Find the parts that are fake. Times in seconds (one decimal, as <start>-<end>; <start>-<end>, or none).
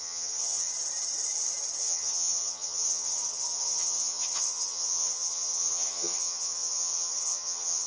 0.0-0.7; 1.8-7.9